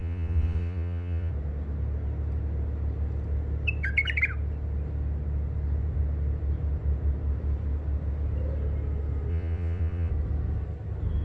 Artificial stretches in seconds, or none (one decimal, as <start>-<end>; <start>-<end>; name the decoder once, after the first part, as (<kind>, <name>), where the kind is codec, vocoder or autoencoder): 0.0-1.3 (vocoder, Vocos); 9.3-10.1